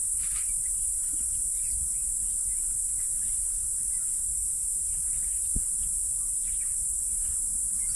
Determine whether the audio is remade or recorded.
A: recorded